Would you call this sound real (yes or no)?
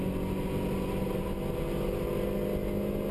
yes